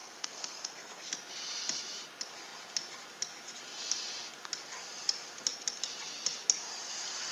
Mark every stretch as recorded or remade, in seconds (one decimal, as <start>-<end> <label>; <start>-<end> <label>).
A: 0.0-1.1 remade; 1.1-7.3 recorded